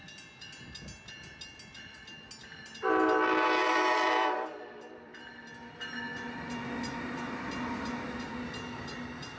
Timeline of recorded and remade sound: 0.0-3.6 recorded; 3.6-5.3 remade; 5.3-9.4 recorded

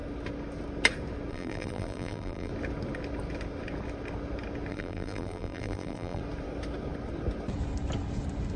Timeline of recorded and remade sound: 0.0-1.3 recorded; 1.3-2.5 remade; 2.5-4.7 recorded; 4.7-6.2 remade; 6.2-8.6 recorded